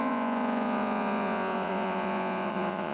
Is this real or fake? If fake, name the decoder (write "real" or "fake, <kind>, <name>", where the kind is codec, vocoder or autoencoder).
fake, vocoder, Vocos